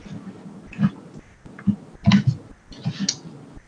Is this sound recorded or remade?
recorded